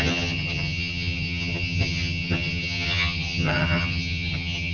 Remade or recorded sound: remade